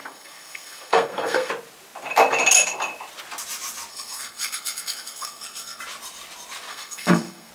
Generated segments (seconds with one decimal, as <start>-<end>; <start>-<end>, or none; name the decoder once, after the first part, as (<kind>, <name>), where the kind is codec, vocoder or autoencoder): 0.0-1.5 (codec, SNAC); 3.9-5.8; 6.7-7.5

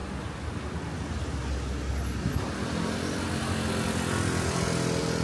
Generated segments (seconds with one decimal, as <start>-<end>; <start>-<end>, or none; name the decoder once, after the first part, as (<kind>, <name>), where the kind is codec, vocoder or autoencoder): none

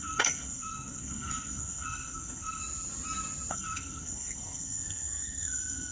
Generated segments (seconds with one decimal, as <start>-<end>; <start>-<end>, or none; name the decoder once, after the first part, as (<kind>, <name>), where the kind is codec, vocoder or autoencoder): 0.0-2.6 (codec, SNAC); 3.5-5.9

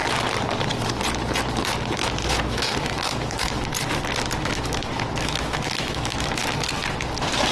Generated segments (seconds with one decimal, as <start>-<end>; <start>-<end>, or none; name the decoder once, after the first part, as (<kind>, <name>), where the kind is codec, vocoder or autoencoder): 2.3-3.7 (autoencoder, DAC-VAE); 4.4-6.4

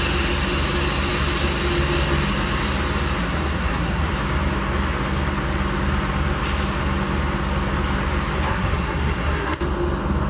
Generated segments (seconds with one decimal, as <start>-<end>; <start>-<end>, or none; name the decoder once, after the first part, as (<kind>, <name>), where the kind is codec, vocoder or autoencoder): 3.2-4.1 (codec, SNAC); 8.5-9.6

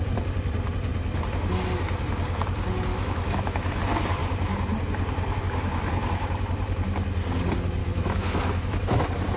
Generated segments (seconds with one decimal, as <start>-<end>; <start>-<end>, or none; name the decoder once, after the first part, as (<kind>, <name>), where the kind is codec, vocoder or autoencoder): 2.9-3.8 (autoencoder, DAC-VAE); 7.8-9.0

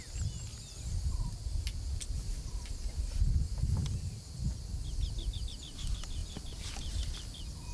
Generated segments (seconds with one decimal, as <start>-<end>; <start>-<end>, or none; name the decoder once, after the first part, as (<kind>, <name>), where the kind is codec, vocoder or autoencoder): none

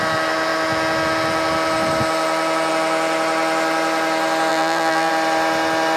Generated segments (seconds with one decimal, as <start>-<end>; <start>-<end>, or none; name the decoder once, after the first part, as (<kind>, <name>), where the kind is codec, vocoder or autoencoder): 4.5-5.1 (vocoder, BigVGAN v2)